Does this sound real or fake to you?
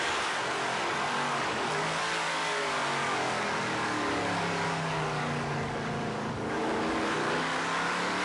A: fake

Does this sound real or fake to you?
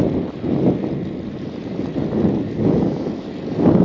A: real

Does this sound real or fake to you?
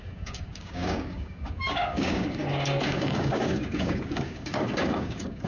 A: fake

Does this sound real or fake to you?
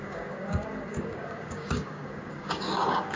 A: fake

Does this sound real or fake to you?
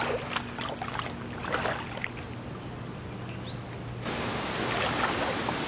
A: real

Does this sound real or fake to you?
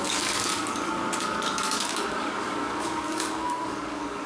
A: fake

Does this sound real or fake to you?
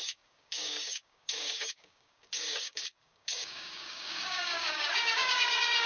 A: fake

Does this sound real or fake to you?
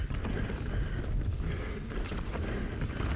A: real